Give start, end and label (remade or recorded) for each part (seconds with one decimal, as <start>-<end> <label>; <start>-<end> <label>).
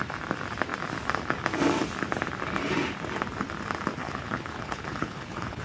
0.0-4.0 recorded; 4.0-5.6 remade